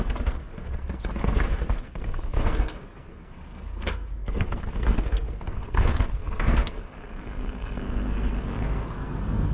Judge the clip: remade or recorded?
remade